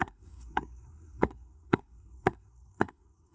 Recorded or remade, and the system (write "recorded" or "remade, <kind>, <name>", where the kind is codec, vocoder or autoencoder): remade, codec, SNAC